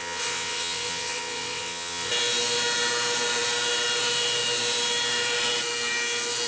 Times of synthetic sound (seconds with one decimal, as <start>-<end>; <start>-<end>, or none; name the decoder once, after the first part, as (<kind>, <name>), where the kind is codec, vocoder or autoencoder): 0.0-2.1 (vocoder, WaveNeXt)